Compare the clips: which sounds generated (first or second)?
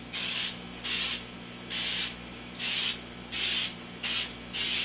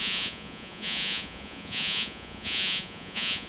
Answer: second